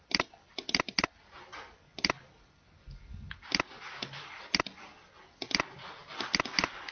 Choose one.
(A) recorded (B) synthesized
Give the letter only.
A